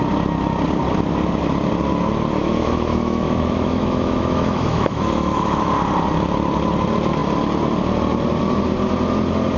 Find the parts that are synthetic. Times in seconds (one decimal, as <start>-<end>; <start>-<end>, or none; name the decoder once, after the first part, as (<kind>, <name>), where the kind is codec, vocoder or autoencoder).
2.4-5.7 (autoencoder, DAC-VAE)